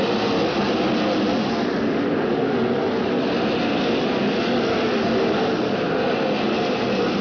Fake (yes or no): no